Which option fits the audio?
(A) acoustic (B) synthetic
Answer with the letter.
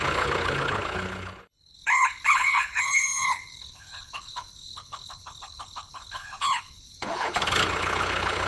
B